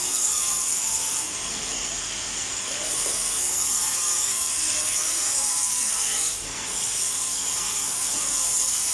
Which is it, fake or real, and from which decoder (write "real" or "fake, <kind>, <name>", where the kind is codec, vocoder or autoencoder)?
fake, codec, SNAC